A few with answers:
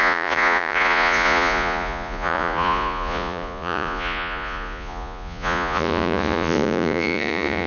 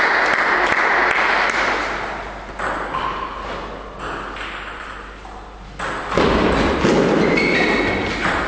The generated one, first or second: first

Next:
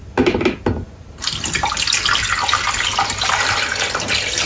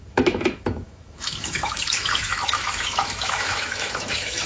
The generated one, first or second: second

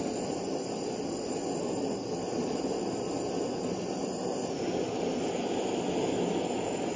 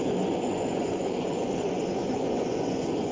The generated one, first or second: second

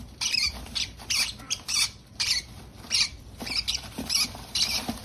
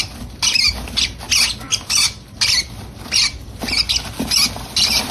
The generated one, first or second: first